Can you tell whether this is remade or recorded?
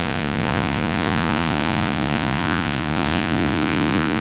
remade